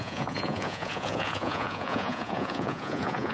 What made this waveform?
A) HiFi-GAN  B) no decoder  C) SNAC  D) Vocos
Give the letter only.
D